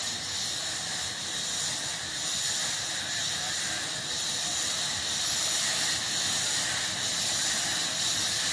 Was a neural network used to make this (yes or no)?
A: no